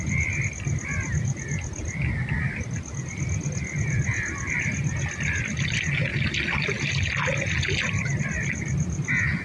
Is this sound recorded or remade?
recorded